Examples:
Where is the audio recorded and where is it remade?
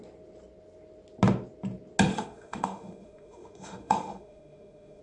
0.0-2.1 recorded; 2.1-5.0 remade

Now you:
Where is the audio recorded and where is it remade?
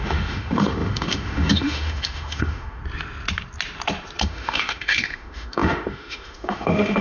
0.0-2.8 remade; 2.8-4.2 recorded; 4.2-7.0 remade